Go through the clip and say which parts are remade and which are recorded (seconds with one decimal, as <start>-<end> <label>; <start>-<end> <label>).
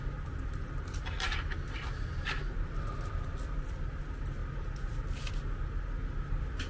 0.0-6.7 recorded